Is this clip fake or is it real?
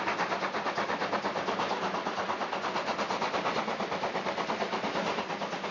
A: real